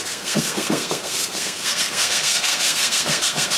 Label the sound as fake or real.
fake